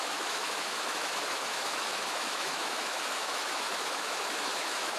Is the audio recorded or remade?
remade